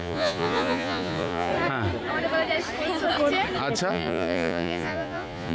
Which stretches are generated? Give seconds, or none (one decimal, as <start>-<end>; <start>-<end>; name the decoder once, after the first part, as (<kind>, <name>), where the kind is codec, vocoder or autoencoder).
0.0-1.5 (vocoder, Vocos); 3.9-5.5